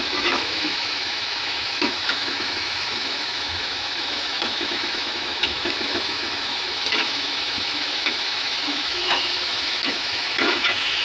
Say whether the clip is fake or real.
fake